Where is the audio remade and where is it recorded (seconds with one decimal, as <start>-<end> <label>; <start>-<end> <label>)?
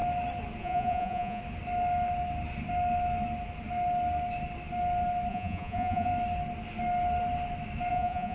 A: 0.0-0.6 recorded; 0.6-1.4 remade; 1.4-5.3 recorded; 5.3-6.1 remade; 6.1-7.9 recorded; 7.9-8.3 remade